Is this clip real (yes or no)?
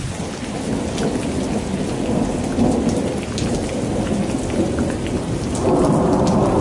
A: yes